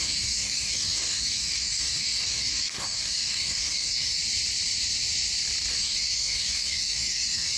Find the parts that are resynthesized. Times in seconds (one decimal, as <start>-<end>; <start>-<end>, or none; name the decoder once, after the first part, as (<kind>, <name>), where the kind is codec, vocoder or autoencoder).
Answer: 0.0-4.2 (codec, DAC); 5.7-7.6